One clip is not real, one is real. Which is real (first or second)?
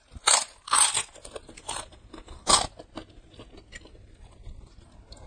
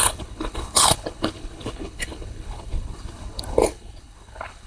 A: first